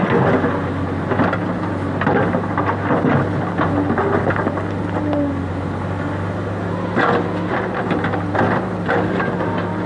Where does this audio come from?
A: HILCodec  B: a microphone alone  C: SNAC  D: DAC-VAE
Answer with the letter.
B